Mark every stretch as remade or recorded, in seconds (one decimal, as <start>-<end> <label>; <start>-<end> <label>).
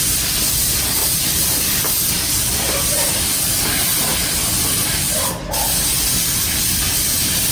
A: 0.0-1.0 recorded; 1.0-1.9 remade; 1.9-7.5 recorded